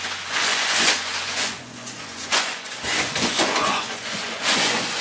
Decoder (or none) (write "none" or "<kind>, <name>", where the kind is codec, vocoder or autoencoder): vocoder, Vocos